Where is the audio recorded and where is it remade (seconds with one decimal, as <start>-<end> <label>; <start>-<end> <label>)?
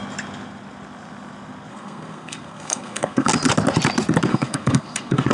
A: 0.0-1.7 recorded; 1.7-3.3 remade; 3.3-4.3 recorded; 4.3-5.3 remade